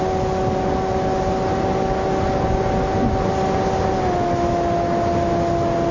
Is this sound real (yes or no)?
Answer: yes